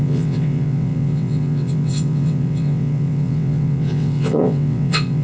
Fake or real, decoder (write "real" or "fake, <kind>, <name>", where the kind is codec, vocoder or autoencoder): fake, vocoder, WaveNeXt